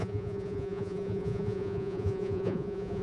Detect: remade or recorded remade